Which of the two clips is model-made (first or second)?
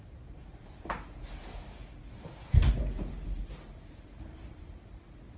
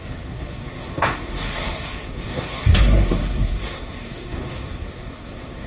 second